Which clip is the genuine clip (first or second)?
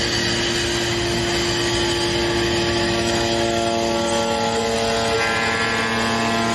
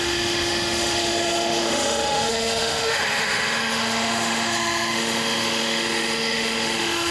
first